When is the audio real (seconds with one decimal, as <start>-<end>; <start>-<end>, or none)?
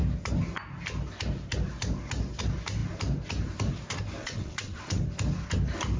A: 0.0-4.2; 5.0-6.0